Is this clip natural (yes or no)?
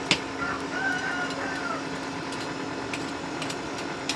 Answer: yes